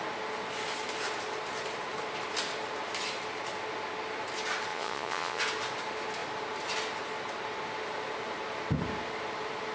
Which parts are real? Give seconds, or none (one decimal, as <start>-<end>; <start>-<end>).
0.0-4.7; 5.4-9.7